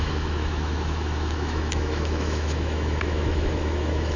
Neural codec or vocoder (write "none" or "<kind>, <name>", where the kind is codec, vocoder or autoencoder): autoencoder, DAC-VAE